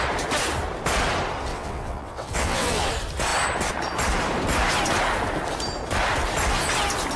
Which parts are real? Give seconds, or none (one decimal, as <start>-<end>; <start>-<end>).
0.0-1.5; 2.9-7.2

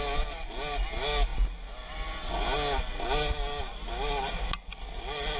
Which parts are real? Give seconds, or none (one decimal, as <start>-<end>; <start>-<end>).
0.0-5.4

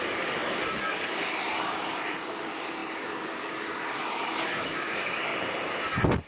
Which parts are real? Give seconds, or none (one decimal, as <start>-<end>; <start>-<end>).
5.3-6.3